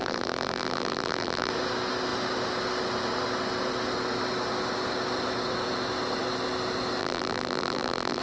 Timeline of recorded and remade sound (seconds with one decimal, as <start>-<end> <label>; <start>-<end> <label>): 0.0-1.5 remade; 1.5-7.0 recorded; 7.0-8.2 remade